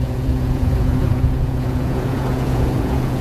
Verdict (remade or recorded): remade